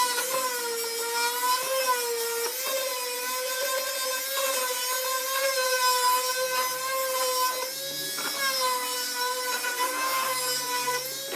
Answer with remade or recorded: recorded